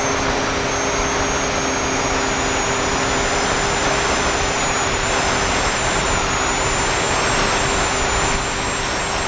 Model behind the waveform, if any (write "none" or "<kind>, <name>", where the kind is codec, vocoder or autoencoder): none